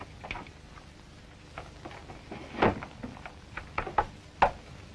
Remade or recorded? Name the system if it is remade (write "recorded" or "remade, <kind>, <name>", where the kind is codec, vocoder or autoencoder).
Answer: recorded